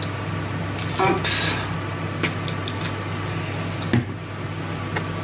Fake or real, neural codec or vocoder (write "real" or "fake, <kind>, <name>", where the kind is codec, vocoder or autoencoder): real